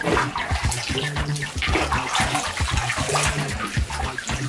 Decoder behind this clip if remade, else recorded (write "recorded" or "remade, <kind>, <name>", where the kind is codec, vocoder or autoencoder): recorded